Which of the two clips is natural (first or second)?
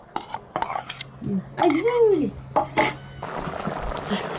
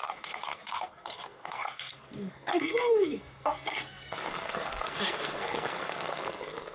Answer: first